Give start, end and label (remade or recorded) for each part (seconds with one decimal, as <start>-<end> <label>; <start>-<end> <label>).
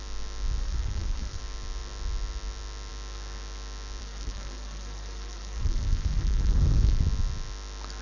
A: 0.0-0.6 recorded; 0.6-1.4 remade; 1.4-4.0 recorded; 4.0-7.0 remade; 7.0-8.0 recorded